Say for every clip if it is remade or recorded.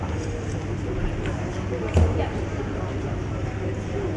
recorded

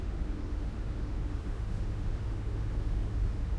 remade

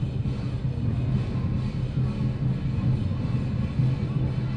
recorded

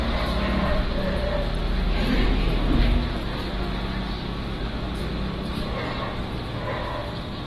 recorded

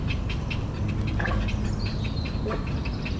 recorded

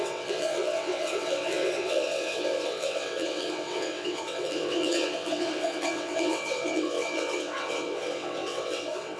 remade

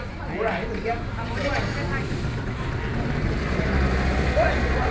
recorded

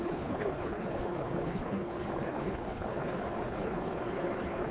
remade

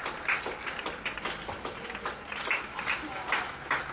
recorded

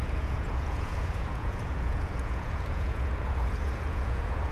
remade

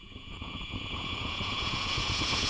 remade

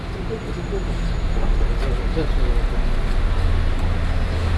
recorded